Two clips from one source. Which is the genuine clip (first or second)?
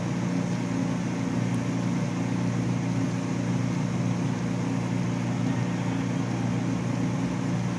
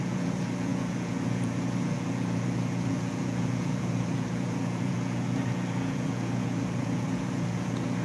first